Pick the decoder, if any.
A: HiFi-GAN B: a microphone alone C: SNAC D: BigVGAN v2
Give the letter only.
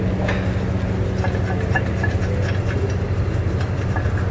B